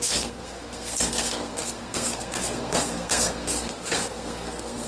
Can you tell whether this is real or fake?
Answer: fake